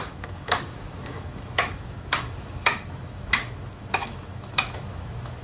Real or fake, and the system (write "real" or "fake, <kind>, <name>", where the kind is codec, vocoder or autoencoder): fake, autoencoder, DAC-VAE